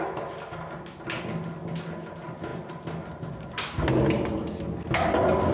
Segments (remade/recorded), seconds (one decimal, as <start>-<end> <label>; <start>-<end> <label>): 0.0-5.5 recorded